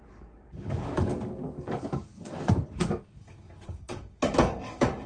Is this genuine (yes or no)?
no